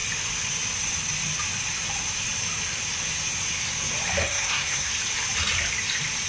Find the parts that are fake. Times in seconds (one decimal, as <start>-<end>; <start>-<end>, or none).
4.2-4.9